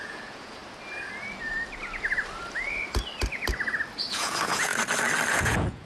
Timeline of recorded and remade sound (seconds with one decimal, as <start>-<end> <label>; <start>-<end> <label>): 0.0-0.6 remade; 0.6-4.1 recorded; 4.1-4.7 remade; 4.7-5.3 recorded; 5.3-5.9 remade